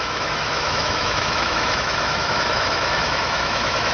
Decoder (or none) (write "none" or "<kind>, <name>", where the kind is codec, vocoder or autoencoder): autoencoder, DAC-VAE